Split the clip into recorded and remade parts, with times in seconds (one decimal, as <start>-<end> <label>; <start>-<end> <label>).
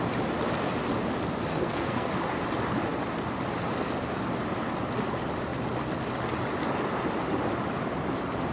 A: 0.0-1.5 recorded; 1.5-2.1 remade; 2.1-8.5 recorded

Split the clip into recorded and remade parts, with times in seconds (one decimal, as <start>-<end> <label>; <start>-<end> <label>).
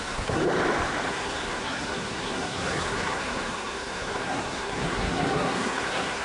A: 0.0-0.4 remade; 0.4-1.1 recorded; 1.1-6.2 remade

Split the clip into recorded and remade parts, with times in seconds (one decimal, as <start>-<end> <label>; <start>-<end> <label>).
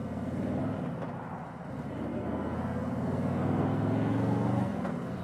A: 0.0-0.6 remade; 0.6-2.1 recorded; 2.1-5.2 remade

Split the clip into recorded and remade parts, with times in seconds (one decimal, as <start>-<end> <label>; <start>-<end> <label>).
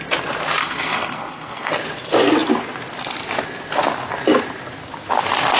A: 0.0-0.6 recorded; 0.6-1.7 remade; 1.7-5.6 recorded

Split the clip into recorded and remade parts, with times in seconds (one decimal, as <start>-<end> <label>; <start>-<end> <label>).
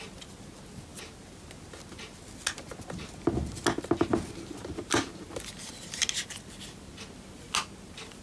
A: 0.0-8.2 recorded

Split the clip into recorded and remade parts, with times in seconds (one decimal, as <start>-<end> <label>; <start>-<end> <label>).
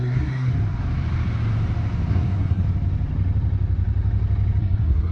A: 0.0-0.5 remade; 0.5-2.1 recorded; 2.1-2.6 remade; 2.6-4.6 recorded; 4.6-5.1 remade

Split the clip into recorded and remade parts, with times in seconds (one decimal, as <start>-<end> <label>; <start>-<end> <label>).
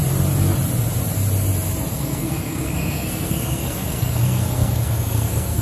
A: 0.0-1.9 recorded; 1.9-5.6 remade